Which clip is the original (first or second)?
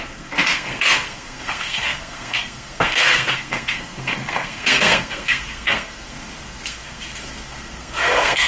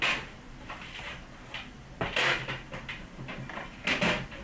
second